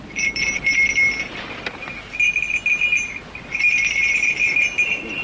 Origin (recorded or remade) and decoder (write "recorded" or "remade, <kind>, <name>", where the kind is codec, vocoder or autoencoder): recorded